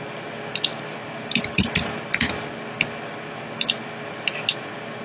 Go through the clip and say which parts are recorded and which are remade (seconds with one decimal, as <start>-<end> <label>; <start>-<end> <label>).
0.0-5.0 recorded

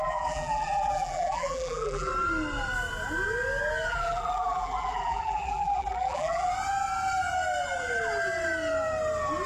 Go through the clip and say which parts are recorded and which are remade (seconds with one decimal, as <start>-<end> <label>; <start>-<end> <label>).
0.0-2.1 remade; 2.1-3.9 recorded; 3.9-6.5 remade; 6.5-9.5 recorded

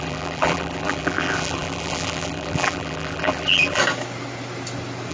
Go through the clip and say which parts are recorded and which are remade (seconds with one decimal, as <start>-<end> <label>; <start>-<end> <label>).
0.0-3.8 remade; 3.8-5.1 recorded

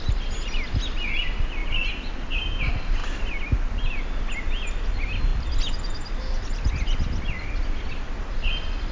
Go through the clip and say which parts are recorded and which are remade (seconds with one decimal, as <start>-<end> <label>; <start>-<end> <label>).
0.0-8.9 recorded

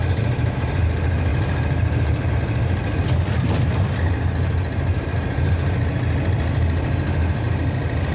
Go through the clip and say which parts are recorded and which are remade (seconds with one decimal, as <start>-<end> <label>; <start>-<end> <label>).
0.0-1.3 recorded; 1.3-2.3 remade; 2.3-4.4 recorded; 4.4-5.5 remade; 5.5-8.1 recorded

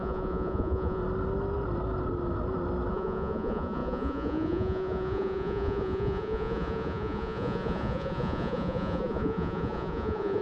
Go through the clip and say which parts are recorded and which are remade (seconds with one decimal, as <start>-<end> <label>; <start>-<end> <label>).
0.0-1.0 remade; 1.0-2.9 recorded; 2.9-10.4 remade